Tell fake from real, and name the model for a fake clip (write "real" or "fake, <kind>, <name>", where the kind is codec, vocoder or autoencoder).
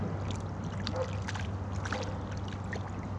real